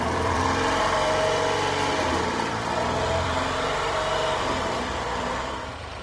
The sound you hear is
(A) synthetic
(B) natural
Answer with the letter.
A